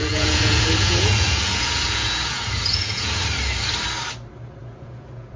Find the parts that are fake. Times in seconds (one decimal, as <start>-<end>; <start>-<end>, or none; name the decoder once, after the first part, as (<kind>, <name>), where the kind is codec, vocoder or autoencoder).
0.0-3.2 (vocoder, Vocos); 4.6-5.4